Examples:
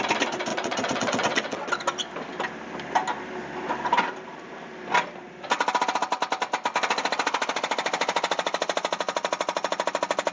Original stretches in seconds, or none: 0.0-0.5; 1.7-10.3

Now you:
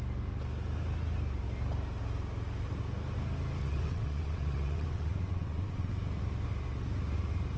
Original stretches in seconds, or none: 0.0-3.6; 5.9-7.6

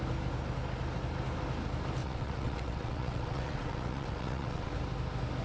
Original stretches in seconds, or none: 0.0-2.0; 4.7-5.4

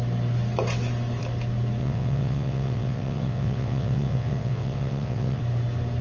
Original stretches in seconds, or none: 0.0-1.8; 5.4-6.0

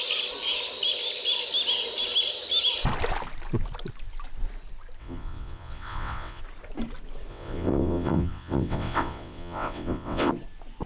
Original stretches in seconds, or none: 0.0-5.0; 6.4-7.3; 10.3-10.9

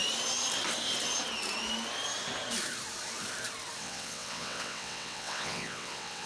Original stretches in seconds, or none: 0.0-3.8

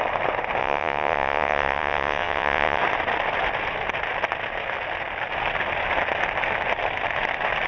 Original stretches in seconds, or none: 0.0-0.6; 2.8-7.7